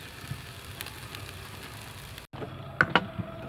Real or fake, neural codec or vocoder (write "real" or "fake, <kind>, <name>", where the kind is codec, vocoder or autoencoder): real